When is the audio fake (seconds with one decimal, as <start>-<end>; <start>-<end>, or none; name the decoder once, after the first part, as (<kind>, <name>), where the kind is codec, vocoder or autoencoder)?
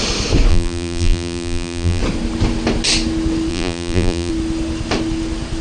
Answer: 0.5-2.0 (vocoder, BigVGAN v2); 3.5-4.3